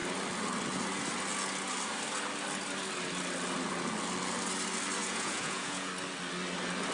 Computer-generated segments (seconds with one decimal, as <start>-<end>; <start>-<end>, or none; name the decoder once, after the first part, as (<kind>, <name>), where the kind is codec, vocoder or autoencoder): 5.0-5.9 (vocoder, Vocos)